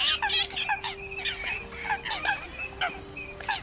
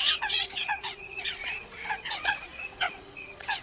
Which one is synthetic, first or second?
second